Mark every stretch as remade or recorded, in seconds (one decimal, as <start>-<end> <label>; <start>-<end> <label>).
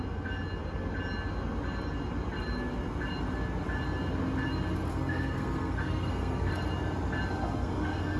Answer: 0.0-4.9 recorded; 4.9-6.5 remade; 6.5-7.4 recorded; 7.4-8.2 remade